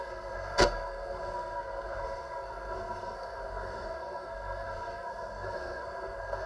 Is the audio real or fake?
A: fake